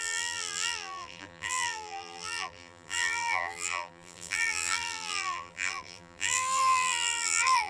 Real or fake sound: fake